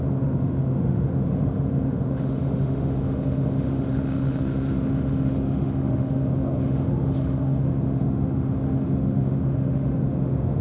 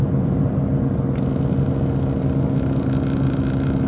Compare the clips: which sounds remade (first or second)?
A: first